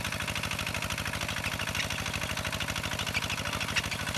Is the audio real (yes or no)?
yes